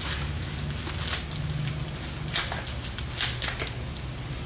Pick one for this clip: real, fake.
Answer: real